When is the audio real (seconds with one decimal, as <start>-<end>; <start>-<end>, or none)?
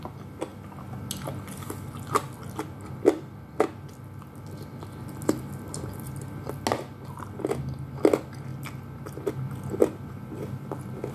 0.0-11.1